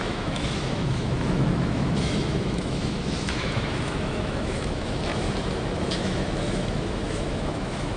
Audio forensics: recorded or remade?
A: remade